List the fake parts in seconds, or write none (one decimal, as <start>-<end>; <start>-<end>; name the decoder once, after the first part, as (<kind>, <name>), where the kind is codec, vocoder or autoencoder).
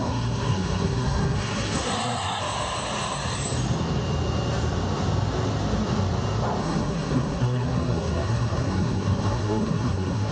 0.0-2.4 (codec, SNAC); 6.6-10.3